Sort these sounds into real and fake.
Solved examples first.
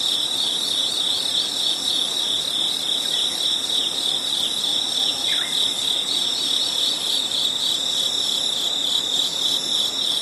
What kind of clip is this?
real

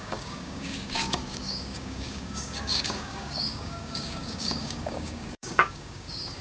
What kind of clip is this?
fake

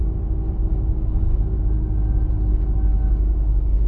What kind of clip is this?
real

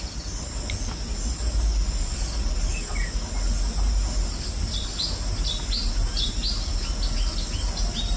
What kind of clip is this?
real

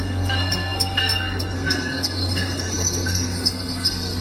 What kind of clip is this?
fake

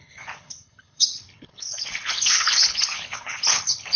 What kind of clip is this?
fake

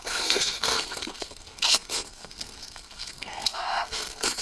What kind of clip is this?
fake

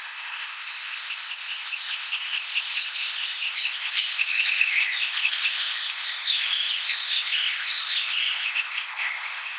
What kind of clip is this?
fake